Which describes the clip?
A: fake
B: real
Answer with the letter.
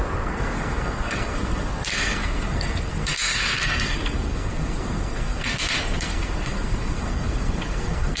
A